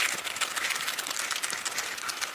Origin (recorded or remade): recorded